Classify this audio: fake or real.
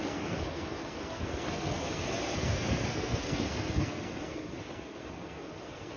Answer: fake